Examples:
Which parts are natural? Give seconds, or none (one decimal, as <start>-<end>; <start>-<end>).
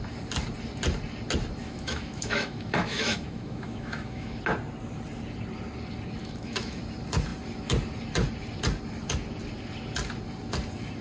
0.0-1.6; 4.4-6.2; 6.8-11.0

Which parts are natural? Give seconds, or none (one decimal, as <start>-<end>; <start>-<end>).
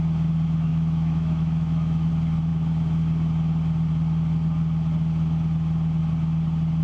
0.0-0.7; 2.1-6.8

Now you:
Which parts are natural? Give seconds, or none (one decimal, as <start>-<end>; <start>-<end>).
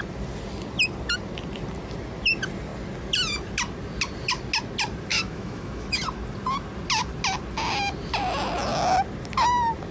0.0-5.1; 6.0-9.9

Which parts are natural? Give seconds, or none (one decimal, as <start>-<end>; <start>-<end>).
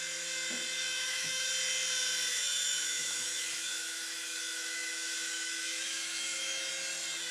0.0-0.9; 1.5-2.3; 6.7-7.3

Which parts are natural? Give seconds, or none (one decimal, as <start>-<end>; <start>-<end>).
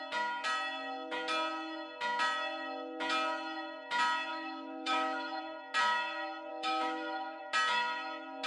0.0-4.3; 5.4-6.5; 7.4-8.5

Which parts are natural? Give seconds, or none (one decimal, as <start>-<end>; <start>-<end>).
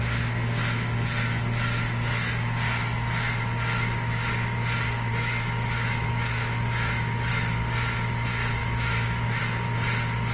0.0-5.1; 7.3-8.6; 9.4-10.3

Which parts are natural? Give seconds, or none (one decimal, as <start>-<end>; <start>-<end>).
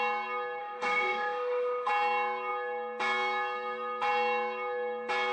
0.0-0.6; 1.9-5.3